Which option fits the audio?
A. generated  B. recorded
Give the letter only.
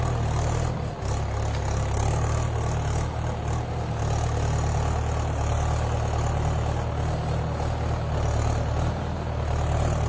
B